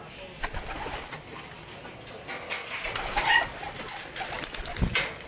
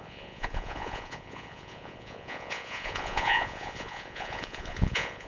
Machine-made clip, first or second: second